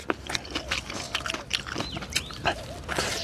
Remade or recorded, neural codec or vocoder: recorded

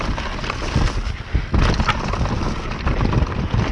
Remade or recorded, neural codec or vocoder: recorded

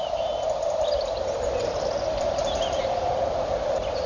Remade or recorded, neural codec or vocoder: remade, vocoder, BigVGAN v2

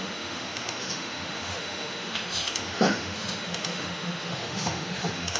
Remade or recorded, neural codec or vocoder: remade, autoencoder, DAC-VAE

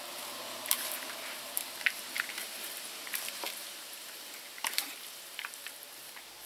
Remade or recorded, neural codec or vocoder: remade, vocoder, BigVGAN v2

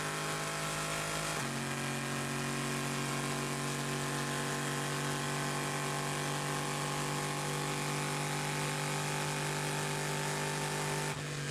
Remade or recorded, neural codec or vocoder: recorded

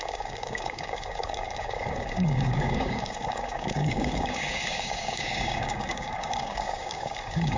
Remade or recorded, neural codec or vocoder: remade, codec, DAC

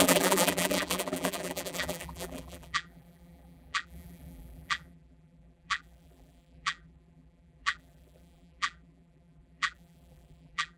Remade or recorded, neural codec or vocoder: remade, vocoder, BigVGAN v2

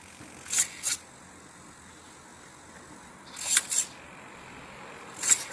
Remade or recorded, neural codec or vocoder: recorded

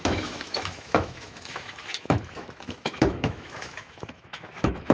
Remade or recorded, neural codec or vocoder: remade, autoencoder, DAC-VAE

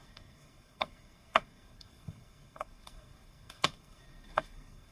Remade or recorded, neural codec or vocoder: remade, codec, SNAC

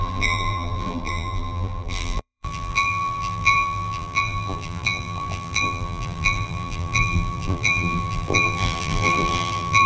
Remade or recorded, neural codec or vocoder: remade, vocoder, BigVGAN v2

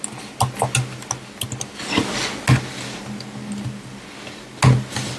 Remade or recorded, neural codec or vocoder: recorded